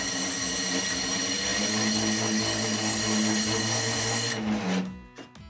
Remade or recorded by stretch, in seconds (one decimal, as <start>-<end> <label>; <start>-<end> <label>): 0.0-5.5 recorded